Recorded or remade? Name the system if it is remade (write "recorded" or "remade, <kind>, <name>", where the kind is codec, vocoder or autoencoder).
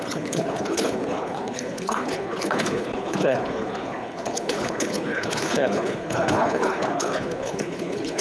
remade, codec, HILCodec